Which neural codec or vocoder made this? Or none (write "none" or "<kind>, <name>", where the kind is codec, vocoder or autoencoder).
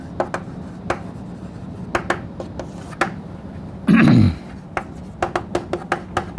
none